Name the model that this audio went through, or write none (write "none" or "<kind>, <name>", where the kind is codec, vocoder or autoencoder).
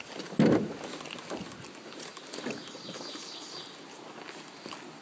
none